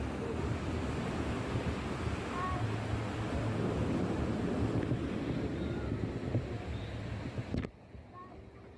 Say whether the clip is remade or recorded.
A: recorded